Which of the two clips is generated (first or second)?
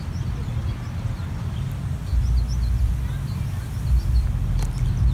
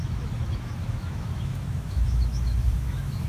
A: second